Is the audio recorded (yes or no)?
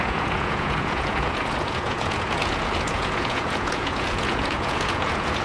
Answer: no